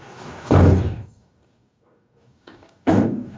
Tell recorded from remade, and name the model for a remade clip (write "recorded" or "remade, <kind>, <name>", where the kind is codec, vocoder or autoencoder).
remade, codec, DAC